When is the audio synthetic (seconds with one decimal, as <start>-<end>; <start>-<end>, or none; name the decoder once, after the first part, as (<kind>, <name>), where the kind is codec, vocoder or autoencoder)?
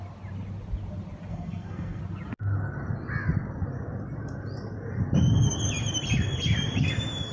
1.3-2.0 (codec, SNAC)